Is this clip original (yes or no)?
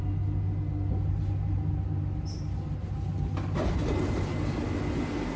yes